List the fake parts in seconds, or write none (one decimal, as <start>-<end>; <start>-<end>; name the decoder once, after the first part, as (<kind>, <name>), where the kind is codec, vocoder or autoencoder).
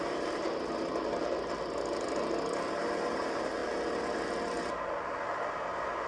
none